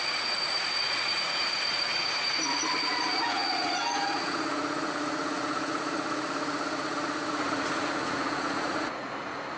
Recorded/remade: remade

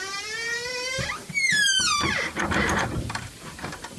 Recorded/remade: remade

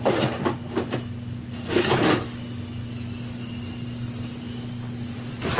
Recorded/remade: recorded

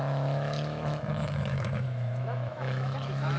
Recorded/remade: remade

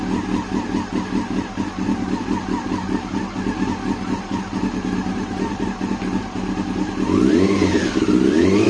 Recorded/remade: recorded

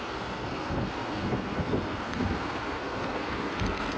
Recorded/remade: remade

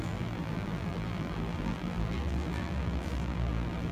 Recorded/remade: remade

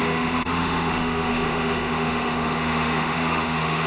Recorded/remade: remade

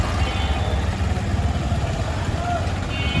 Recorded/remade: recorded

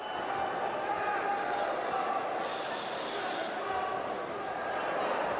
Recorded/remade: recorded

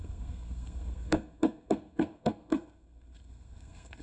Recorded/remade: remade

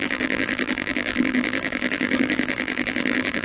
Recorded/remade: remade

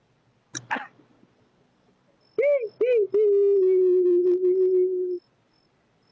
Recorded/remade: recorded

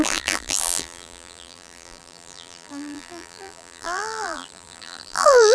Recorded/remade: remade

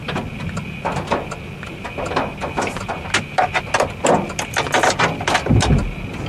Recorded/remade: recorded